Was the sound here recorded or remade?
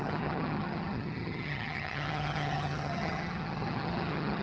remade